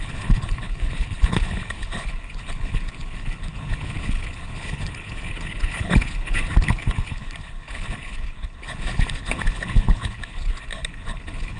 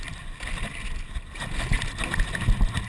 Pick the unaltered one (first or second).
second